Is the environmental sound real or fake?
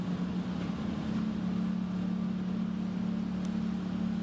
real